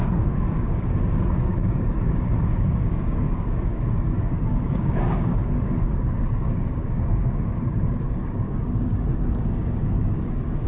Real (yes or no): no